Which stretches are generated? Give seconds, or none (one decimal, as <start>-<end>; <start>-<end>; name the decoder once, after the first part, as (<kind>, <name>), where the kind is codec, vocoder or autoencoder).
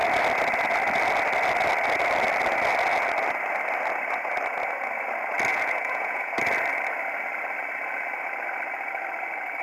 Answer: 5.5-6.3 (vocoder, Vocos)